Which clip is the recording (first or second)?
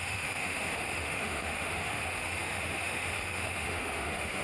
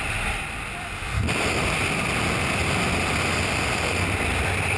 second